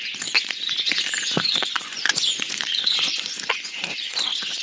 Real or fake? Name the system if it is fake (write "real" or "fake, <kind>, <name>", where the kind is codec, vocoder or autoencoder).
fake, vocoder, Vocos